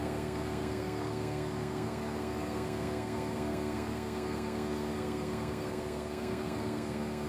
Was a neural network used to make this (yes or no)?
yes